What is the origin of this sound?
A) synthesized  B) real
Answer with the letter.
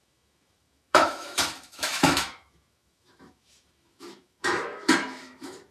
A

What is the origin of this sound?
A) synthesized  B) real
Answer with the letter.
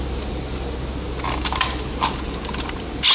B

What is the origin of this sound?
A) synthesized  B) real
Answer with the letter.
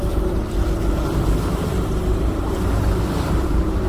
A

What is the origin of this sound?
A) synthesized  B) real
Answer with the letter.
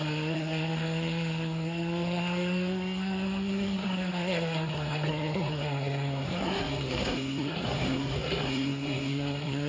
A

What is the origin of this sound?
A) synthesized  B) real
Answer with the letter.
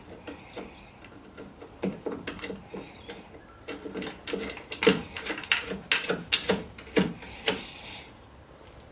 B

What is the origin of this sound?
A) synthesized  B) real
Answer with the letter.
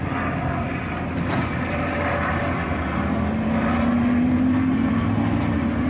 B